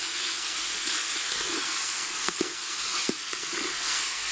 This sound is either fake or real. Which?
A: fake